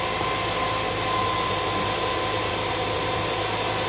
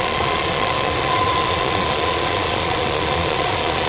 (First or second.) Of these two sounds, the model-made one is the second